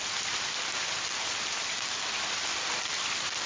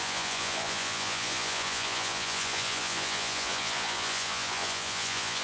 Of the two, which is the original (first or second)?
first